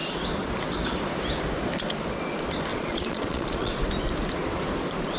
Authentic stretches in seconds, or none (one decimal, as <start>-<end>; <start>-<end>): 0.0-2.7; 3.9-5.2